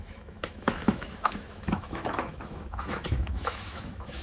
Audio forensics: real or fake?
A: fake